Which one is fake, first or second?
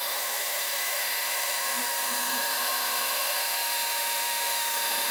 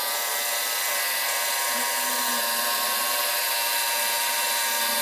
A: first